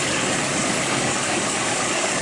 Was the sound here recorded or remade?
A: remade